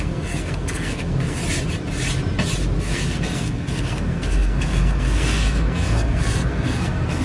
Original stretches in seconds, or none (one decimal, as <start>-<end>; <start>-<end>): 1.4-2.8